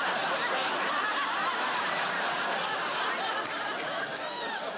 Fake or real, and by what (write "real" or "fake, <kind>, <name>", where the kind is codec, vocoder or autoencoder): real